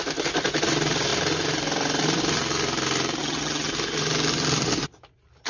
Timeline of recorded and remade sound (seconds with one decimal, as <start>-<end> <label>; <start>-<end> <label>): 0.0-3.2 recorded; 3.2-3.7 remade; 3.7-5.5 recorded